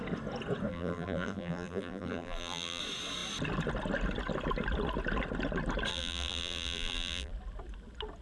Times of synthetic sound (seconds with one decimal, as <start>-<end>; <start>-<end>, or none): 0.7-2.8; 5.9-7.3